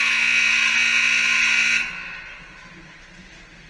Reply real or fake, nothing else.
real